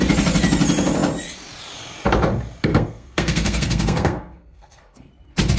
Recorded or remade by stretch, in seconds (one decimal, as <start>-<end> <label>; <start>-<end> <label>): 0.0-2.7 recorded; 2.7-5.1 remade; 5.1-5.6 recorded